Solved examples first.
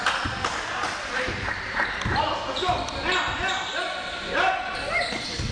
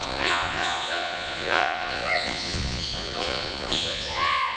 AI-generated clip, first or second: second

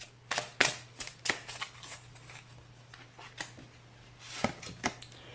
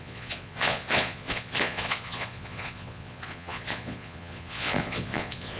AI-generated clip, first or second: second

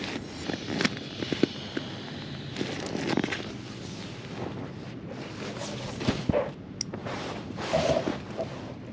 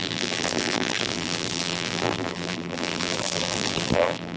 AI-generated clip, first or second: second